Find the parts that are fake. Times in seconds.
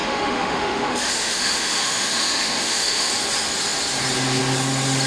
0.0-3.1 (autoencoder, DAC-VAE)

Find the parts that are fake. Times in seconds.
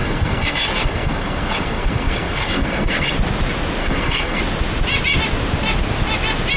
0.0-3.1 (codec, SNAC); 3.8-4.4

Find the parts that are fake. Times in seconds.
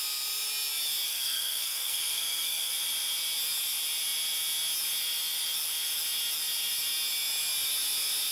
1.1-2.7 (codec, SNAC)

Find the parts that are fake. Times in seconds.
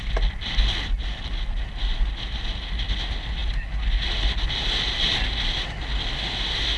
none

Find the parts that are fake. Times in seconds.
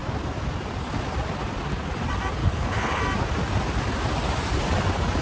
2.4-3.0 (codec, HILCodec)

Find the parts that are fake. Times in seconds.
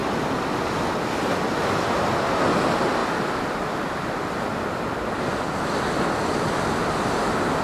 none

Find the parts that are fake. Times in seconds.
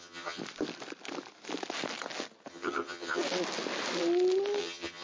0.0-0.4 (vocoder, HiFi-GAN); 2.5-3.2; 4.6-5.0